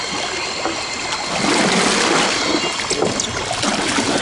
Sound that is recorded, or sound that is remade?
recorded